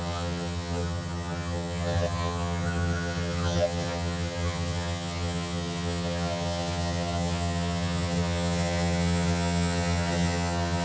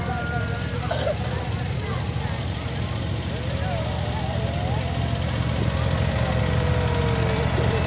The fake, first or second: first